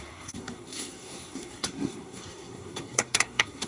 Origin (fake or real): fake